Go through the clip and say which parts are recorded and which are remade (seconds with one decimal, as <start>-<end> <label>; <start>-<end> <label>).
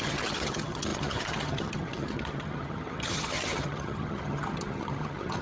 0.0-5.4 remade